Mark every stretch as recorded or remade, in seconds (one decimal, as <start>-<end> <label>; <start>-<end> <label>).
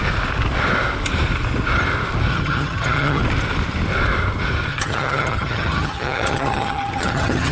0.0-2.3 recorded; 2.3-3.2 remade; 3.2-4.7 recorded; 4.7-7.5 remade